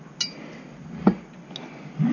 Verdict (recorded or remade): recorded